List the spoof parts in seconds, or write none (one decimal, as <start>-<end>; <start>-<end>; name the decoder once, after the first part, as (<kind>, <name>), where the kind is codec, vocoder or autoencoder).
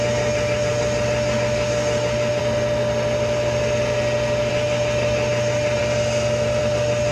0.0-2.4 (autoencoder, DAC-VAE); 4.5-5.8; 6.6-7.1